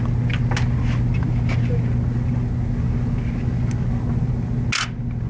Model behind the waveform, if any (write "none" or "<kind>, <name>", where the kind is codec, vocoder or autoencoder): none